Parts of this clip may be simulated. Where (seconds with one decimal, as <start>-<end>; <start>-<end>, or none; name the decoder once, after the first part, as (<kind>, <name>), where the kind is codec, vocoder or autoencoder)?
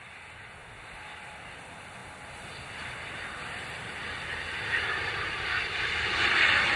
none